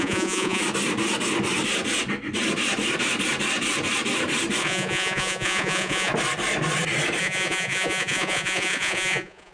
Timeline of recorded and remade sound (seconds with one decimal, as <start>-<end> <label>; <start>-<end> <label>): 0.0-0.6 remade; 0.6-4.6 recorded; 4.6-6.1 remade; 6.1-7.2 recorded; 7.2-9.5 remade